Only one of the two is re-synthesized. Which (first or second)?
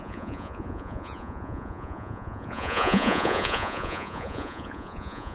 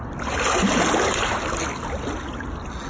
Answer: first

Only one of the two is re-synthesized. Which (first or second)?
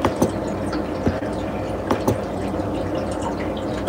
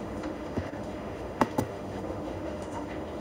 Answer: second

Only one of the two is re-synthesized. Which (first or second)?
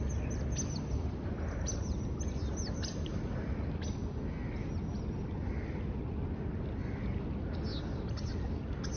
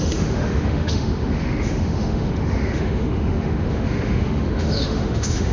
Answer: second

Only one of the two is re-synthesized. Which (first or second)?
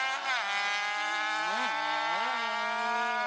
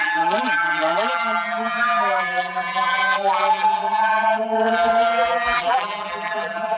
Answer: second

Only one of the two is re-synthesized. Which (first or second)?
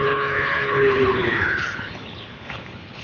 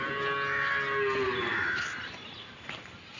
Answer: first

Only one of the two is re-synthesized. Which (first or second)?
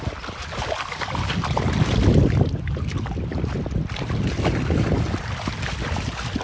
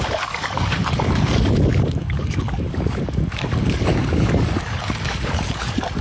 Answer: second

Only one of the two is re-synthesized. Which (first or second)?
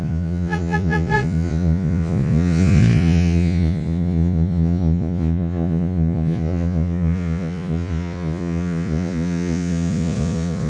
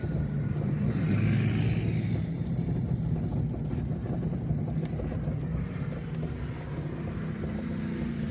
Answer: first